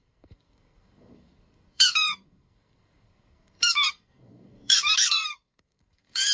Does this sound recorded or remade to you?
remade